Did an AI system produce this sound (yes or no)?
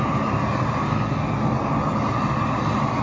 no